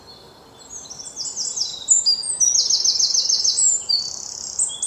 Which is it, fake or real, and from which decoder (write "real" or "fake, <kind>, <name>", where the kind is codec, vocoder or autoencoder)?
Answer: real